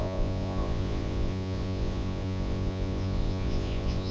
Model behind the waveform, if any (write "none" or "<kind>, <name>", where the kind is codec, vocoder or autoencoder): vocoder, Vocos